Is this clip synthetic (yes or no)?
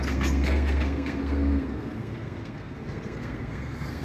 yes